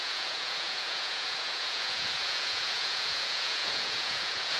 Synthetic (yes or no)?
yes